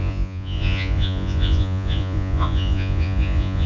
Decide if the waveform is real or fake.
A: fake